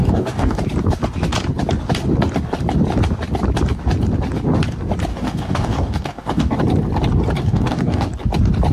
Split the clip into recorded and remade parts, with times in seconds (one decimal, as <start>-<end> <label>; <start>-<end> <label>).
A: 0.0-0.6 remade; 0.6-5.1 recorded; 5.1-6.6 remade; 6.6-7.4 recorded; 7.4-8.1 remade; 8.1-8.7 recorded